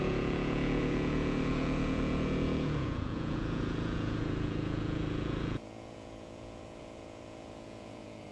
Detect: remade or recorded remade